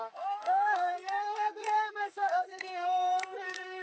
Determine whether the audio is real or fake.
fake